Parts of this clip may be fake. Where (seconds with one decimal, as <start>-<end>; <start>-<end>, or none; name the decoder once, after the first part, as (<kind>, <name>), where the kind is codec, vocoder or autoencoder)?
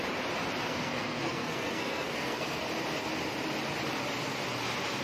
0.6-2.6 (codec, SNAC)